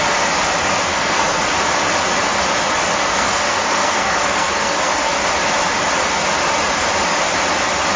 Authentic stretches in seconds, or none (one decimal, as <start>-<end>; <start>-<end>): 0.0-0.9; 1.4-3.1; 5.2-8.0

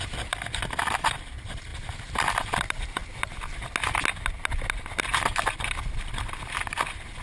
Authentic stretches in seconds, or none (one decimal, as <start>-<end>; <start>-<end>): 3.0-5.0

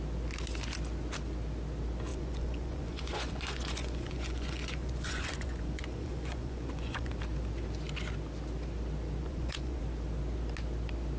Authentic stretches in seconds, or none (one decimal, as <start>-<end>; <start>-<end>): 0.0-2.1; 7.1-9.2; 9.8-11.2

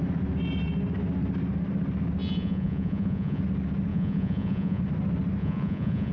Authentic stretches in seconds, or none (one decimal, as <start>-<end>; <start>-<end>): 0.0-2.2; 3.4-3.9; 4.8-5.4

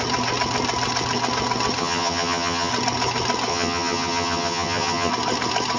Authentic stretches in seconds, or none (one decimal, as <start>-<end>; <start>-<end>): 0.0-1.8; 2.7-3.5; 5.1-5.8

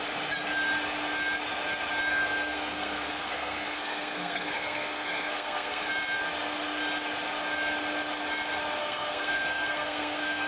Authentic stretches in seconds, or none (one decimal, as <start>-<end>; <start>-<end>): 0.0-2.1; 5.9-8.8

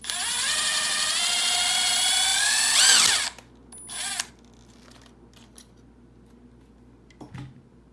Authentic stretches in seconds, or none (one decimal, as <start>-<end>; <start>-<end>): 0.0-7.9